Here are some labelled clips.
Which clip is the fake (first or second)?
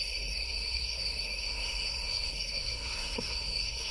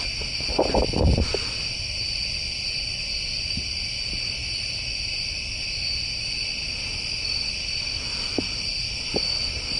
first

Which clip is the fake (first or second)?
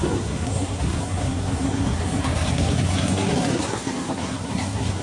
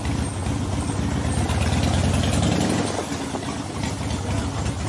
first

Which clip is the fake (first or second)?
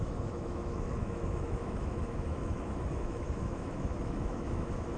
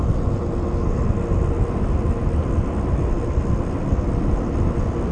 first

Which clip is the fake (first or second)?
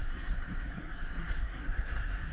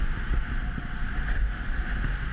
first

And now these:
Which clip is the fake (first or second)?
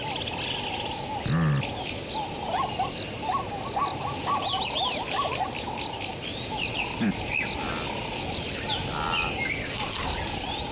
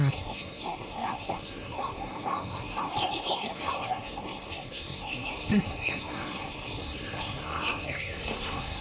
second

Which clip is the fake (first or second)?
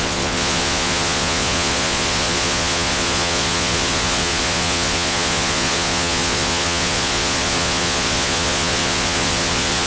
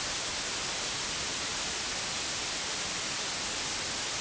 first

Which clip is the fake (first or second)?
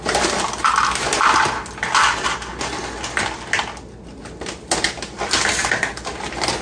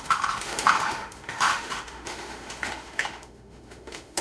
second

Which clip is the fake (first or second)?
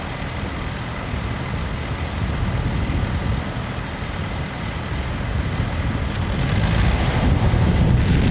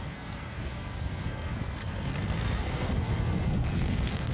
second